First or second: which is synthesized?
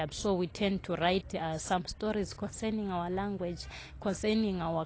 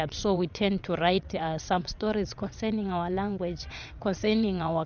second